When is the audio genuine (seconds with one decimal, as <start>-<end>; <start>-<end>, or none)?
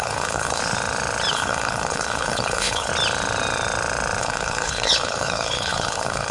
0.6-1.3; 2.9-4.2